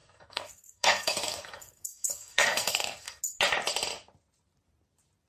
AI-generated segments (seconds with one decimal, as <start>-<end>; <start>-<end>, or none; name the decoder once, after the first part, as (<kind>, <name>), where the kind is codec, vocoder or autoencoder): 0.0-3.2 (codec, SNAC)